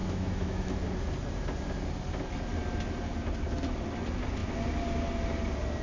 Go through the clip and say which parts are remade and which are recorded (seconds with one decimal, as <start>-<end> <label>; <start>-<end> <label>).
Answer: 0.0-0.7 remade; 0.7-5.8 recorded